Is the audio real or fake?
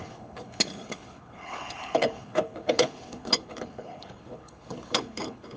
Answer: fake